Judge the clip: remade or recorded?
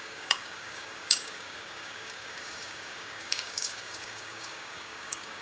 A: remade